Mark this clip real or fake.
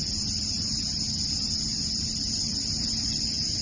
real